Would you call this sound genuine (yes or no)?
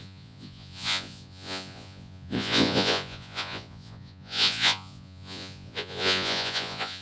no